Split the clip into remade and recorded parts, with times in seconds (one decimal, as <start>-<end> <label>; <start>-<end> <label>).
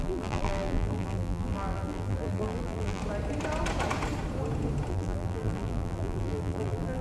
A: 0.0-3.0 remade; 3.0-4.9 recorded; 4.9-7.0 remade